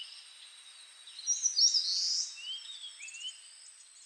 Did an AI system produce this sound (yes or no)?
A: no